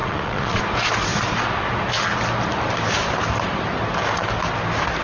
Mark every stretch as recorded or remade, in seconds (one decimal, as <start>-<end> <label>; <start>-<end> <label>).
0.0-0.6 remade; 0.6-5.0 recorded